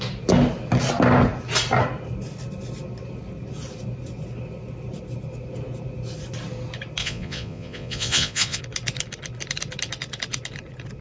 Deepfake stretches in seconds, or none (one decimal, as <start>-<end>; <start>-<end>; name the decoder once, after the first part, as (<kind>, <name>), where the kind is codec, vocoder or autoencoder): 7.0-8.6 (vocoder, Vocos)